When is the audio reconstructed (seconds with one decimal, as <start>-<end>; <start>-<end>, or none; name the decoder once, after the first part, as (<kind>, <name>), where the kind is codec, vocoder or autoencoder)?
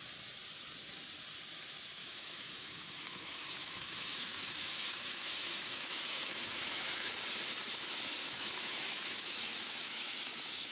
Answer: 2.0-7.1 (autoencoder, DAC-VAE); 8.2-10.7